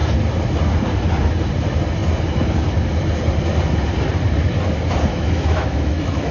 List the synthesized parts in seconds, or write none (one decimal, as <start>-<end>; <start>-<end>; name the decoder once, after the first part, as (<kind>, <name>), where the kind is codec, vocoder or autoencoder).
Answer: 5.1-6.3 (autoencoder, DAC-VAE)